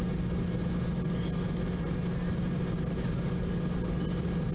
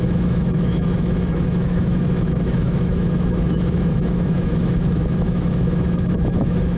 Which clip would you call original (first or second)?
first